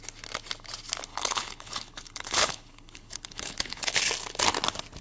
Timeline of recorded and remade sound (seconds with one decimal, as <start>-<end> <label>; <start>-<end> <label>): 0.0-1.1 recorded; 1.1-4.1 remade; 4.1-5.0 recorded